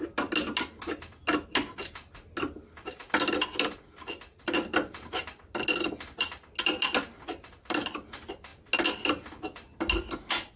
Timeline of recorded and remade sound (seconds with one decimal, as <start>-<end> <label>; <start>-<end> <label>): 0.0-10.6 recorded